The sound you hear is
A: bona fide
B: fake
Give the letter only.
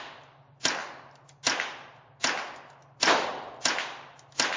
A